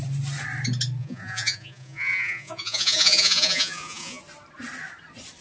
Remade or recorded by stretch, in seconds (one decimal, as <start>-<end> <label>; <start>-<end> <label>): 0.0-1.0 recorded; 1.0-4.2 remade; 4.2-5.4 recorded